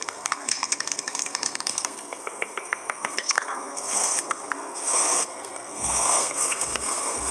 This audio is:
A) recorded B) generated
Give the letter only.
B